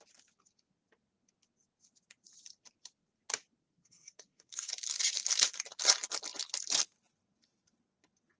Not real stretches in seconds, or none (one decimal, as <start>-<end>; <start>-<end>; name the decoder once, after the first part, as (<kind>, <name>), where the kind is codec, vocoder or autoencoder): 3.6-4.7 (codec, SNAC)